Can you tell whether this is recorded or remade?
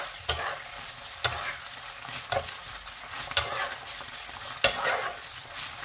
recorded